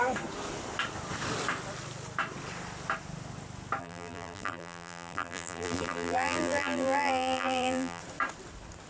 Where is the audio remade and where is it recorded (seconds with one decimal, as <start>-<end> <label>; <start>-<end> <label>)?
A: 0.0-3.8 recorded; 3.8-8.0 remade; 8.0-8.9 recorded